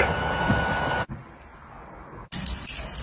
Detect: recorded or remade recorded